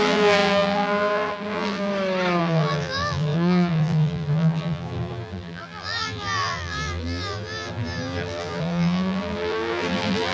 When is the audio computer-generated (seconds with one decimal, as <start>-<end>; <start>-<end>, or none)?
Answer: 0.0-1.9; 2.4-10.3